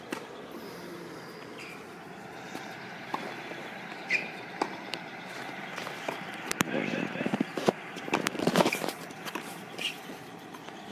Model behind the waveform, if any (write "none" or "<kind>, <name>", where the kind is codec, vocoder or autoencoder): vocoder, BigVGAN v2